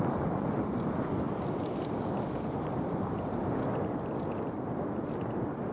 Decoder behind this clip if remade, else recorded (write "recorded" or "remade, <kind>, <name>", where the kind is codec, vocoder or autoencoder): recorded